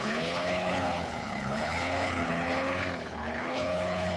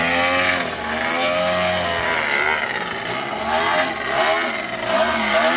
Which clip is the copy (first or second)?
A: first